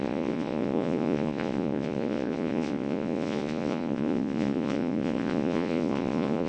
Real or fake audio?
fake